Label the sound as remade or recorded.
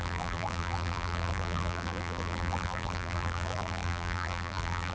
remade